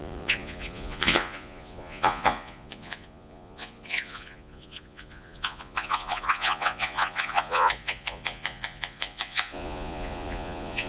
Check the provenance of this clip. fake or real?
fake